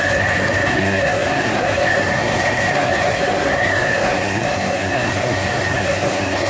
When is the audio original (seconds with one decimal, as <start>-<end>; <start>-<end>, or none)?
none